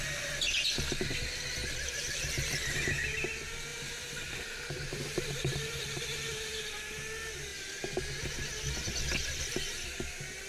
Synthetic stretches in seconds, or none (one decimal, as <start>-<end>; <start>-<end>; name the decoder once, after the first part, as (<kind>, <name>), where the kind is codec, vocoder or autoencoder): 3.7-6.7 (vocoder, BigVGAN v2)

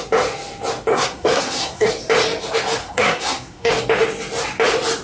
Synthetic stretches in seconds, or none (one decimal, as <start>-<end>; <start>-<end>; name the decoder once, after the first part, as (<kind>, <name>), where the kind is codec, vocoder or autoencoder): 0.9-1.9 (codec, SNAC); 2.8-3.7

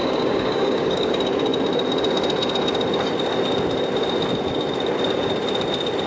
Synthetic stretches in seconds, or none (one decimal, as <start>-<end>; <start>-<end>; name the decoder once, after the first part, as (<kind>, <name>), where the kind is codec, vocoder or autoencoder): 0.0-1.1 (codec, DAC)

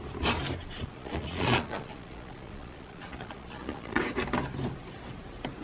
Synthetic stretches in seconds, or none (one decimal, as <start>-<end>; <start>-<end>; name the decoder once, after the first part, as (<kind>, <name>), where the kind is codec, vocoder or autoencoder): 0.6-4.0 (vocoder, Vocos)

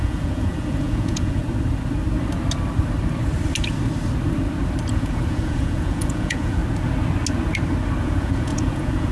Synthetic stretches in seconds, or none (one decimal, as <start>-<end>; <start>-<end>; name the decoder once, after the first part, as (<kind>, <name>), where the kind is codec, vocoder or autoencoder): 0.0-1.4 (vocoder, Vocos); 4.9-6.6; 8.0-9.1